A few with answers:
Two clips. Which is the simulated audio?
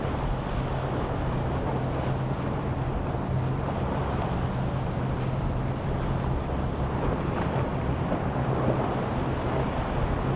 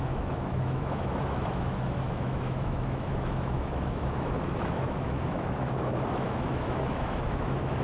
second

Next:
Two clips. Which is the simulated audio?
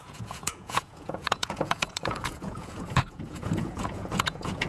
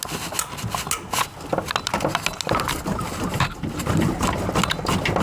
first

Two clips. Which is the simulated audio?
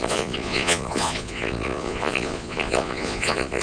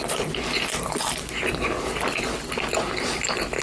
first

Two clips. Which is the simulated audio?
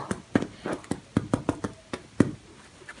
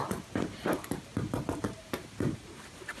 second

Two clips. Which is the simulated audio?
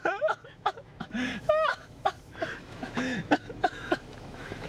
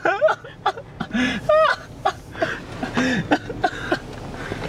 first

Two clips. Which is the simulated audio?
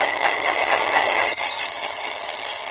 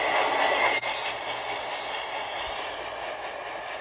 first